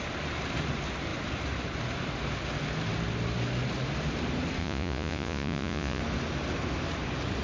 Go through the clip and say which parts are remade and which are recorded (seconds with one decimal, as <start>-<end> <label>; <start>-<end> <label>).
0.0-4.6 recorded; 4.6-6.0 remade; 6.0-7.4 recorded